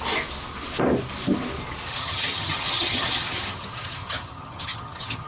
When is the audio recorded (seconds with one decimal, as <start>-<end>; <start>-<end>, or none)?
0.0-1.9